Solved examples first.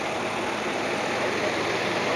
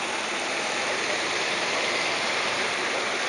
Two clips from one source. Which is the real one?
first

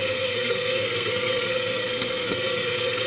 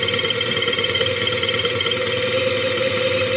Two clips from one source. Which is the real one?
second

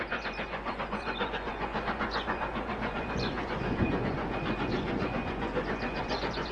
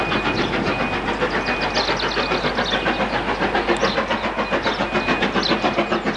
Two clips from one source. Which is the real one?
second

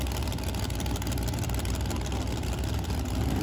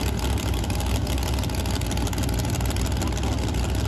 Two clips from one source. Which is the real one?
second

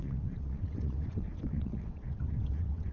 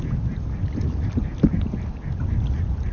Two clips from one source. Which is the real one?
second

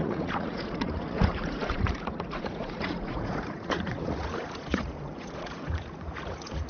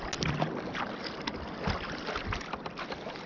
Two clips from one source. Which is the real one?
second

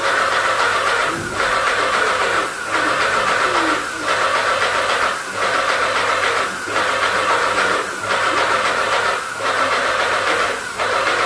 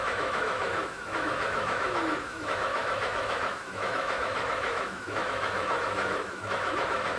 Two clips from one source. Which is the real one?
first